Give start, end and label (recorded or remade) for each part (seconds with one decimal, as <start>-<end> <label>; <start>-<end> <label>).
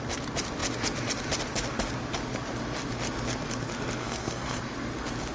0.0-4.0 recorded; 4.0-4.6 remade; 4.6-5.3 recorded